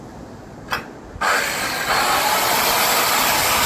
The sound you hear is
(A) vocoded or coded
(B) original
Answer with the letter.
B